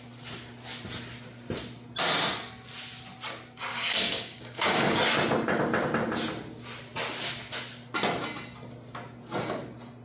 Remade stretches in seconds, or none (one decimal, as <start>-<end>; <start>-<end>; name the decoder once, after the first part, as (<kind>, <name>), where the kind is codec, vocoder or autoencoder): 3.7-5.0 (codec, DAC)

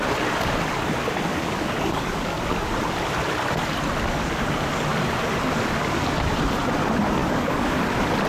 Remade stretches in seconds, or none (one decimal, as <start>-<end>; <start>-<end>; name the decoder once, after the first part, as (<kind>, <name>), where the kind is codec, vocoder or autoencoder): 1.3-2.4 (codec, DAC); 7.2-7.8

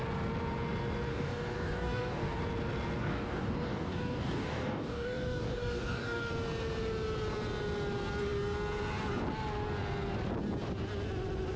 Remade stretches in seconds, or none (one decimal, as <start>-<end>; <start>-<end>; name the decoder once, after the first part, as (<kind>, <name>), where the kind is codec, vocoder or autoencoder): 1.1-2.4 (codec, DAC); 3.0-6.3

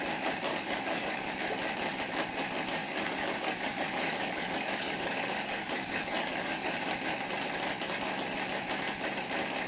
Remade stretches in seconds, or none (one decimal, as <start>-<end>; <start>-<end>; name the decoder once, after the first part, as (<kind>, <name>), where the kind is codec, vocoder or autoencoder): 0.5-1.3 (codec, DAC); 2.8-6.8

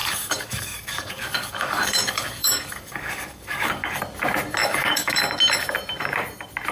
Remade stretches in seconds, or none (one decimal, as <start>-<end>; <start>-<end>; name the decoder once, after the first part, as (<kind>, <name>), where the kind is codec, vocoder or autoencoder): 0.0-4.0 (codec, DAC); 4.6-5.2